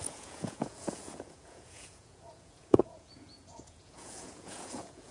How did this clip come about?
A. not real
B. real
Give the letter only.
A